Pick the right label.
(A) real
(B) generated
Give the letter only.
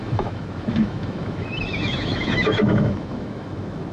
B